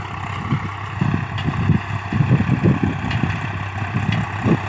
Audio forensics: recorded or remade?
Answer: recorded